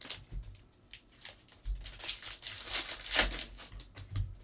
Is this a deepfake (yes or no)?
no